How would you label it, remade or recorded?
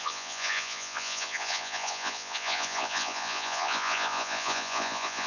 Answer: remade